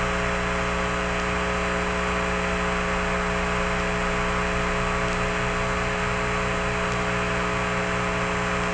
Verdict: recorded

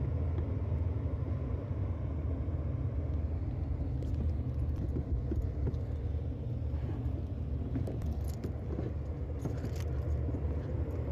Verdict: recorded